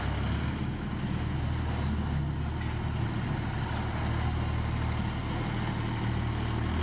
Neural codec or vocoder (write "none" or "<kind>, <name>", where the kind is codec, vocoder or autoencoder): none